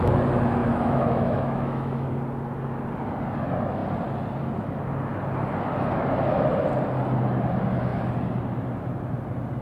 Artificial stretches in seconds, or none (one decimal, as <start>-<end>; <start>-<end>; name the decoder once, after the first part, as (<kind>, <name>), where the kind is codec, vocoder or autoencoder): 0.6-2.1 (autoencoder, DAC-VAE)